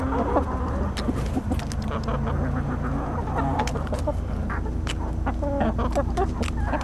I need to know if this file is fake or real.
real